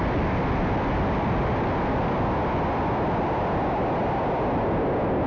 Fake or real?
real